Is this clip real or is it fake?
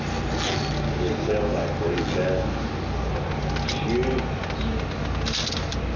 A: real